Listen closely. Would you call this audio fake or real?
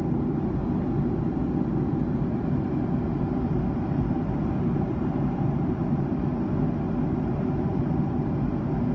real